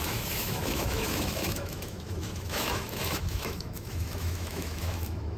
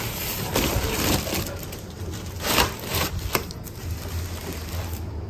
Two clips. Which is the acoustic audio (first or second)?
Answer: second